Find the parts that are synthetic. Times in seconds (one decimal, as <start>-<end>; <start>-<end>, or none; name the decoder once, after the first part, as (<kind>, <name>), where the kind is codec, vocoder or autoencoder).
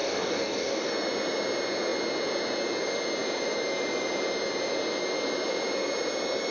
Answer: 0.0-0.9 (codec, DAC)